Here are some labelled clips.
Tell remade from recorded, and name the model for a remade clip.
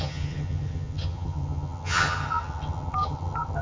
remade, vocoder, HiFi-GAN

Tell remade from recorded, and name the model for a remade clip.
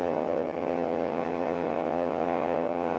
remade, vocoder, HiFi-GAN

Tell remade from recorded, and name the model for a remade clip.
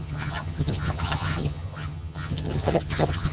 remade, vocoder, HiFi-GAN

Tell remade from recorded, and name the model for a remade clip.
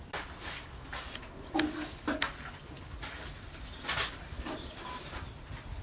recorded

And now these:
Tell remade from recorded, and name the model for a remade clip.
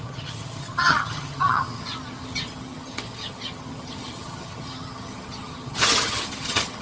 remade, vocoder, HiFi-GAN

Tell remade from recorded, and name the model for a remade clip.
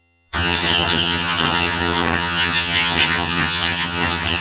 remade, vocoder, HiFi-GAN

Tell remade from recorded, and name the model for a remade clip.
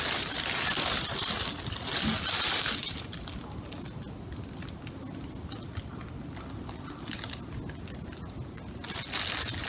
recorded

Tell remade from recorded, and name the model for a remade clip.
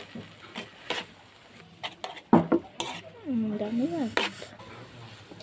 recorded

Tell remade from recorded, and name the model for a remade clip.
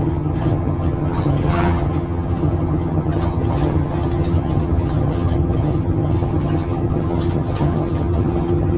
remade, vocoder, HiFi-GAN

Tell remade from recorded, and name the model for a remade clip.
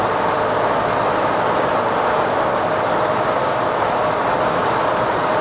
recorded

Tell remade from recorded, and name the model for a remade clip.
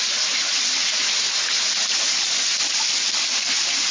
recorded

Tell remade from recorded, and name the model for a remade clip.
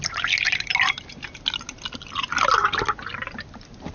recorded